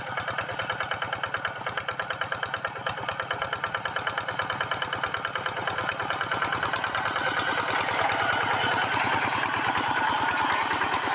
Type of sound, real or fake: real